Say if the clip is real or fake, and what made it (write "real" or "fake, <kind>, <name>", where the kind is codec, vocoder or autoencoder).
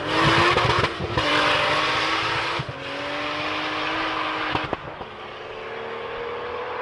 real